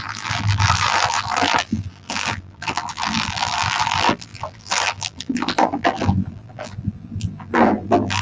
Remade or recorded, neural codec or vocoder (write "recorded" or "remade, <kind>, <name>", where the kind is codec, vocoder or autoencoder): remade, vocoder, BigVGAN v2